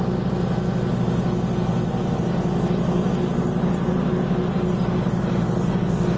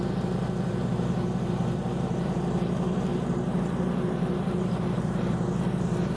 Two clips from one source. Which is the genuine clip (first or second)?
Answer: first